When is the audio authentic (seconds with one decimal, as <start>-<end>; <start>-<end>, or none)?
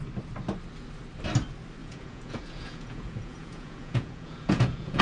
0.0-1.8